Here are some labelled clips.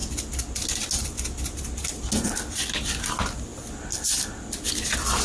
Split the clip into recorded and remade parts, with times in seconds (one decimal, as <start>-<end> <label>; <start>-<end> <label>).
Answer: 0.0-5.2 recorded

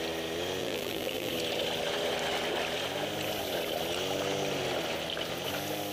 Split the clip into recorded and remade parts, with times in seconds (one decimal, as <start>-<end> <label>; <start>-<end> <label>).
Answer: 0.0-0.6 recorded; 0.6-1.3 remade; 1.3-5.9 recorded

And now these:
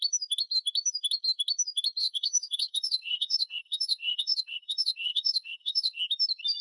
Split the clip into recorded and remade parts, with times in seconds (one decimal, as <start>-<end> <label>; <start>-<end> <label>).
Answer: 0.0-2.0 recorded; 2.0-6.0 remade; 6.0-6.6 recorded

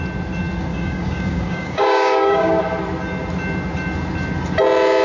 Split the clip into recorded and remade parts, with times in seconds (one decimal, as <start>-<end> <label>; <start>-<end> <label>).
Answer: 0.0-0.7 recorded; 0.7-2.6 remade; 2.6-5.0 recorded

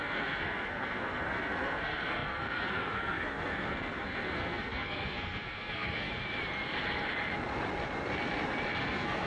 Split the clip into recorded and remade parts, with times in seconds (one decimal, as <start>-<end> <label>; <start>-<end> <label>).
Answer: 0.0-6.1 remade; 6.1-8.8 recorded; 8.8-9.3 remade

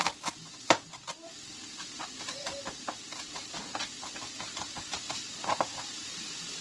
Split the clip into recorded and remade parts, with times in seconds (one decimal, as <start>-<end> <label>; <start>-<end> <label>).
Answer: 0.0-6.6 recorded

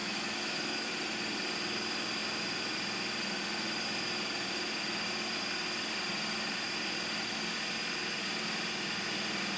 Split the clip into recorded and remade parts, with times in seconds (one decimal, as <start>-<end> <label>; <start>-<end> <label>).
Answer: 0.0-0.9 remade; 0.9-9.6 recorded

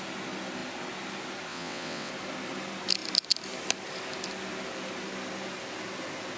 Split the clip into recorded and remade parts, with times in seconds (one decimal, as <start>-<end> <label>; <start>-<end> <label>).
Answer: 0.0-1.5 recorded; 1.5-2.1 remade; 2.1-6.4 recorded